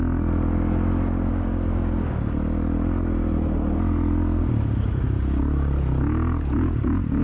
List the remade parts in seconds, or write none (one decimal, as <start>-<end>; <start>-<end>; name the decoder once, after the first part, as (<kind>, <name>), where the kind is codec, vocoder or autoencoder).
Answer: 1.3-2.3 (codec, DAC); 4.4-5.4